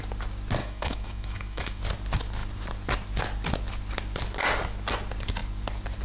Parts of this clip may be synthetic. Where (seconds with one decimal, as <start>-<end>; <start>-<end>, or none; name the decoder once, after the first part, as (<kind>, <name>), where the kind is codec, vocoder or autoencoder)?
0.6-1.8 (autoencoder, DAC-VAE)